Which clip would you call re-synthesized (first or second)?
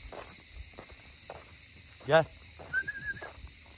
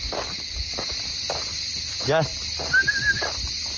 first